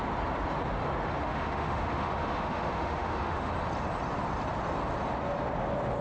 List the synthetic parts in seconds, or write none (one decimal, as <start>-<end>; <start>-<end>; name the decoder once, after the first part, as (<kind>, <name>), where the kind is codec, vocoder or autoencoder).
1.2-3.5 (autoencoder, DAC-VAE)